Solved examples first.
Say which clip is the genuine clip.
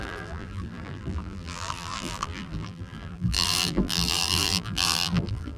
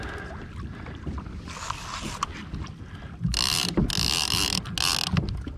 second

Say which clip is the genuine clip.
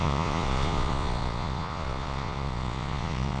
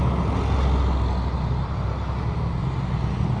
second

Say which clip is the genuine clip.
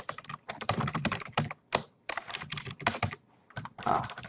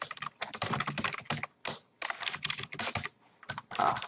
second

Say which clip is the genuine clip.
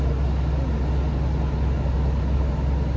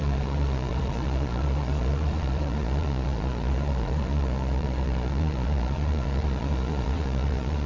first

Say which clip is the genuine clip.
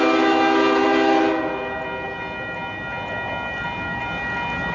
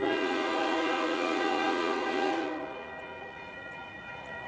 first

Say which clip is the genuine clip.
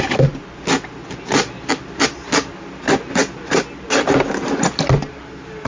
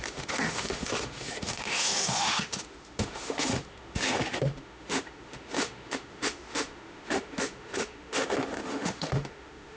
first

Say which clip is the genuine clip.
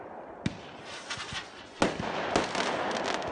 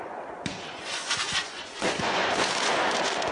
first